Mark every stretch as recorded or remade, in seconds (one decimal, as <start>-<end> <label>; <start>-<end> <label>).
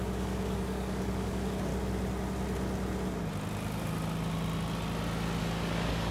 0.0-1.7 remade; 1.7-5.4 recorded; 5.4-6.1 remade